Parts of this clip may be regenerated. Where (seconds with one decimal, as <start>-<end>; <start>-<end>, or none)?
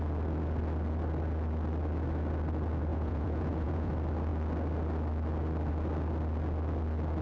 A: 2.9-3.9